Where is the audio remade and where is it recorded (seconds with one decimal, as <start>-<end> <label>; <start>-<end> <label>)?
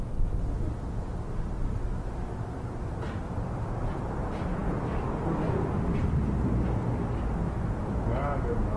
0.0-8.8 recorded